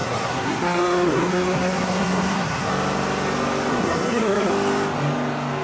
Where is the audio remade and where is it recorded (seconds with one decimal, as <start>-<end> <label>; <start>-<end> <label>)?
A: 0.0-2.7 remade; 2.7-3.7 recorded; 3.7-4.5 remade; 4.5-5.6 recorded

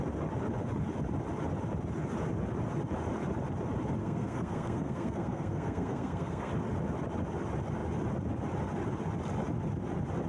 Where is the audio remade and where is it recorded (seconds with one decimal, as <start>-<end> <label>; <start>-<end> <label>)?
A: 0.0-4.0 recorded; 4.0-6.5 remade; 6.5-10.3 recorded